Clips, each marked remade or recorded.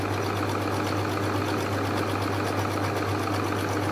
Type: recorded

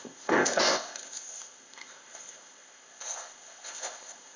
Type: remade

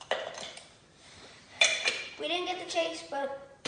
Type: remade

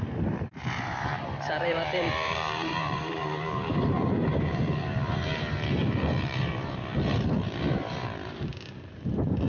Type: remade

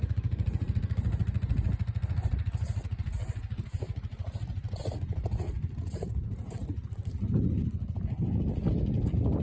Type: recorded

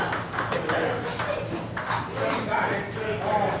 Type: recorded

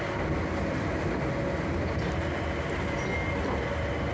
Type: recorded